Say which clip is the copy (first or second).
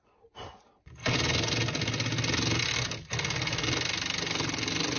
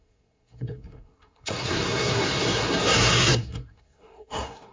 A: second